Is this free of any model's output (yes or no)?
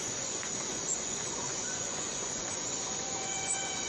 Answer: no